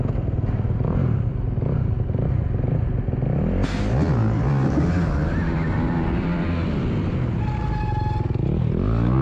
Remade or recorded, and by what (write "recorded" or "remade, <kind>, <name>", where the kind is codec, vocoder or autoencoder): recorded